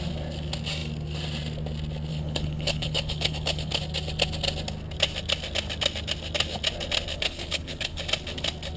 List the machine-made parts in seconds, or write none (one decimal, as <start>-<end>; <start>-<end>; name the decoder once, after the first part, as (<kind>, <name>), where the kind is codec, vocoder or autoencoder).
2.1-3.8 (codec, HILCodec); 7.1-8.0